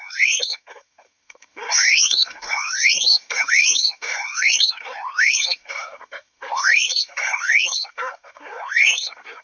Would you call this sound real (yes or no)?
no